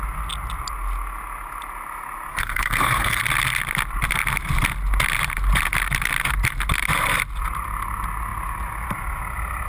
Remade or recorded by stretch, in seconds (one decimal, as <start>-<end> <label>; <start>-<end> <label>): 0.0-2.3 recorded; 2.3-3.2 remade; 3.2-9.7 recorded